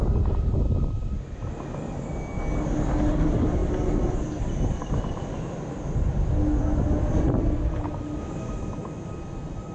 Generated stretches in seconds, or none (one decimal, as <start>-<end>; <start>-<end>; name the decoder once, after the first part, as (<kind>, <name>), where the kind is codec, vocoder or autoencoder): none